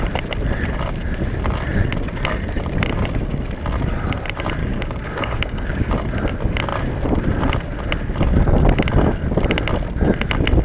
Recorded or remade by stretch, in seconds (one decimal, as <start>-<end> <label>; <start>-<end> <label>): 0.0-4.6 recorded; 4.6-5.9 remade; 5.9-10.6 recorded